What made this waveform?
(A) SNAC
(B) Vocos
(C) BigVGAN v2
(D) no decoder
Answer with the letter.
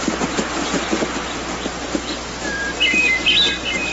D